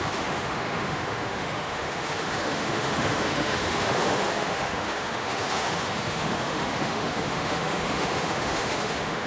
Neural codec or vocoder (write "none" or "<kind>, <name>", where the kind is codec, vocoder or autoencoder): autoencoder, DAC-VAE